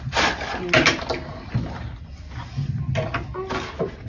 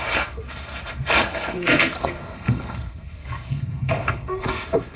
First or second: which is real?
first